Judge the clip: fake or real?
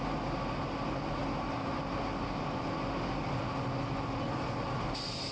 real